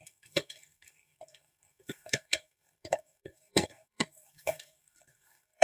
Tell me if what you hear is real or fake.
fake